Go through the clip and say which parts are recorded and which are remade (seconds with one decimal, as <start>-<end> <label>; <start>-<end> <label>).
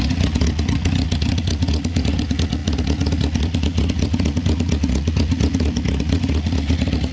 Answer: 0.0-7.1 remade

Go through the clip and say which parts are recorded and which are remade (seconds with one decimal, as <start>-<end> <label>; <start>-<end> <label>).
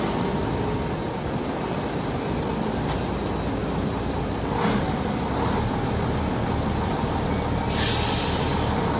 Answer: 0.0-9.0 recorded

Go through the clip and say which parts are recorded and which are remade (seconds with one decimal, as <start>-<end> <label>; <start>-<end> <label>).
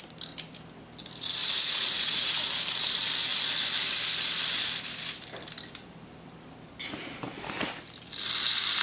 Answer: 0.0-1.4 recorded; 1.4-2.5 remade; 2.5-8.8 recorded